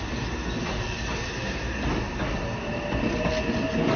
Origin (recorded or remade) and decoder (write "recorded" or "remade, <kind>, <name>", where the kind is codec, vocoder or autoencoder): recorded